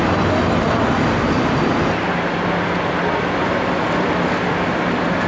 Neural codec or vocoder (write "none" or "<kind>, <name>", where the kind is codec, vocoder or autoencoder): none